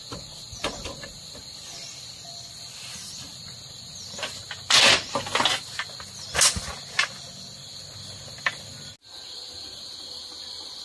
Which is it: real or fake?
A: real